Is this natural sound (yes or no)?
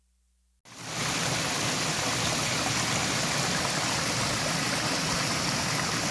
yes